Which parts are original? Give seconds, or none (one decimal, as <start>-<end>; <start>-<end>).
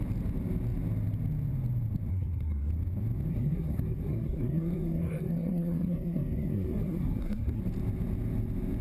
0.0-2.1; 2.7-3.3; 7.6-8.8